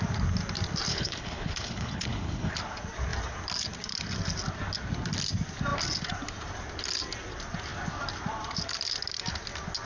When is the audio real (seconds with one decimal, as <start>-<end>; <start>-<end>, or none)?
0.0-0.9; 2.5-9.8